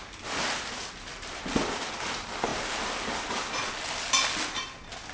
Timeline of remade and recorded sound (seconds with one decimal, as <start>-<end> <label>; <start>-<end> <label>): 0.0-5.1 recorded